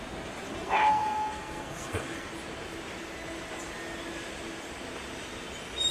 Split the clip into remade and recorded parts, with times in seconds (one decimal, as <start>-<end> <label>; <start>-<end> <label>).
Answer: 0.0-0.5 recorded; 0.5-2.3 remade; 2.3-5.9 recorded